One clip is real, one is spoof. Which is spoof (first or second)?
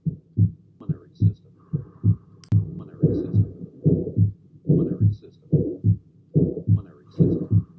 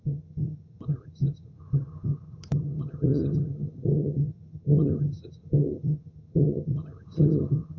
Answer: second